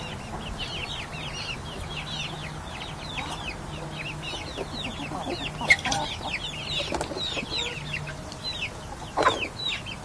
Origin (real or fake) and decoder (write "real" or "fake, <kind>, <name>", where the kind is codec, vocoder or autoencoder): real